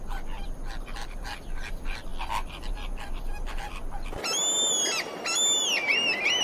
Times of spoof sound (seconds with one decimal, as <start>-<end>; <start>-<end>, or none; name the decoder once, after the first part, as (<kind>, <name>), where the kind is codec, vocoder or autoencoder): none